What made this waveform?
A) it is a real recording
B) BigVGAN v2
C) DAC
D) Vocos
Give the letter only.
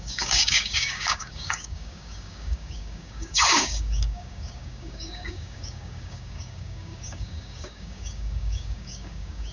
C